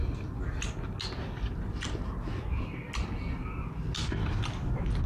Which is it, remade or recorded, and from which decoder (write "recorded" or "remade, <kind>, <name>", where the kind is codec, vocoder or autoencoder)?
recorded